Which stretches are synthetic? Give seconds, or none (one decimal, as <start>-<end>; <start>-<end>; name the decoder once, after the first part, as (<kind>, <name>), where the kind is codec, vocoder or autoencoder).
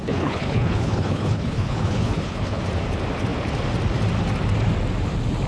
0.0-2.6 (codec, HILCodec)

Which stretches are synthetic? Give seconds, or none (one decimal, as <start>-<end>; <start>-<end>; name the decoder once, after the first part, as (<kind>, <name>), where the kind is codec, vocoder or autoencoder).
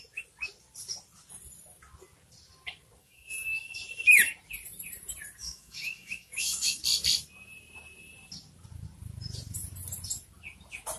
3.0-3.8 (autoencoder, DAC-VAE); 5.4-6.8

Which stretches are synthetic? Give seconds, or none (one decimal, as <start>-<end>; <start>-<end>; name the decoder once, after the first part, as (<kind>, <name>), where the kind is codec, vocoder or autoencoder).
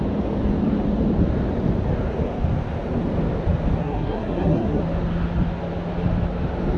3.8-4.8 (codec, SNAC)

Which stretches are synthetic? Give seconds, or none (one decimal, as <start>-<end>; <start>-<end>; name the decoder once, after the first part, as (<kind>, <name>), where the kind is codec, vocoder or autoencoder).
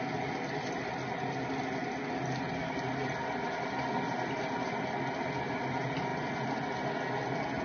none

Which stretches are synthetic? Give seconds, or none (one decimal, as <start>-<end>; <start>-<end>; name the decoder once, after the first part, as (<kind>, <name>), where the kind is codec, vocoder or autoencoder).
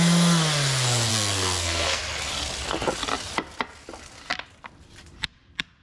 1.1-2.0 (codec, SNAC)